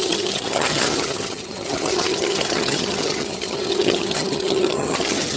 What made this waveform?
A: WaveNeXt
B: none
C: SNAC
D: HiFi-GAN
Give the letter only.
D